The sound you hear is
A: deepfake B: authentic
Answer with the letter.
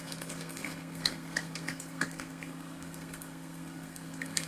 A